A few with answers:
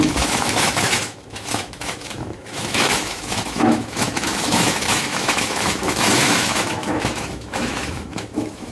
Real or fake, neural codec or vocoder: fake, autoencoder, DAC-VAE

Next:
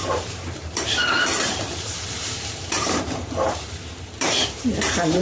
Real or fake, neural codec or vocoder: fake, vocoder, BigVGAN v2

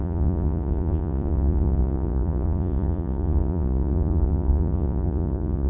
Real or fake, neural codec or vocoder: fake, vocoder, Vocos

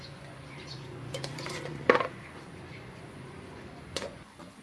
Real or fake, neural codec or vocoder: fake, vocoder, Vocos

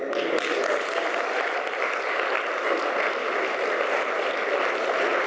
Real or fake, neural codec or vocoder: real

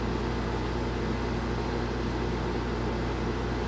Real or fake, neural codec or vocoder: real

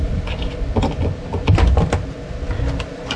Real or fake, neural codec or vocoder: real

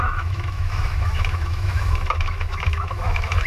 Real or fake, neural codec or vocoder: fake, autoencoder, DAC-VAE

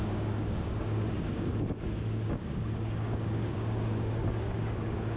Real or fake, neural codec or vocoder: fake, codec, DAC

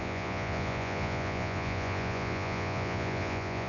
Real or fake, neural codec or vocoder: fake, vocoder, Vocos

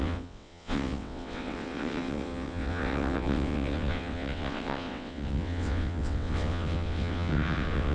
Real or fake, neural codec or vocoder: fake, vocoder, WaveNeXt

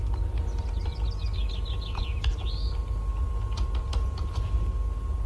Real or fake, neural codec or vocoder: fake, vocoder, BigVGAN v2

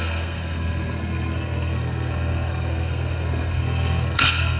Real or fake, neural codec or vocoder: fake, codec, SNAC